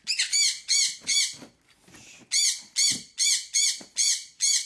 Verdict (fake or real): real